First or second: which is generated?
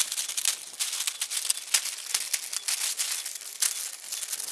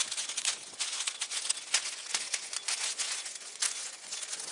second